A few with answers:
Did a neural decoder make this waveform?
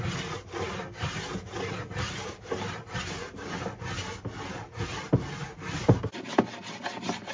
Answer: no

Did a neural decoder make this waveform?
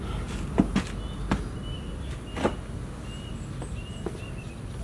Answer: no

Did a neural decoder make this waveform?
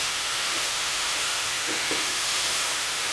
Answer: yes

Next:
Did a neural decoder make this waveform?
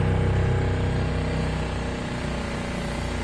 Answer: no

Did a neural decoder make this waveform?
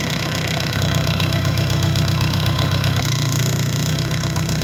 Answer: yes